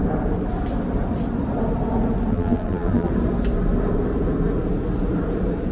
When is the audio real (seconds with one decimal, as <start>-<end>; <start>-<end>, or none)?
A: 0.0-2.3; 3.1-5.7